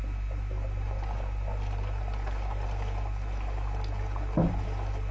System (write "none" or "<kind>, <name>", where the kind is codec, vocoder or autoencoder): none